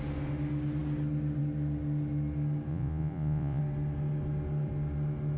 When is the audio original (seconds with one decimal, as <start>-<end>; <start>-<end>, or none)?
0.0-2.7; 3.6-5.4